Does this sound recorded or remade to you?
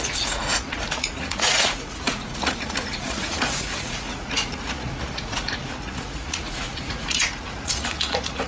remade